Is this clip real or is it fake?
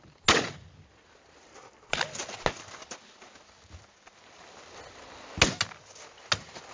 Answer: real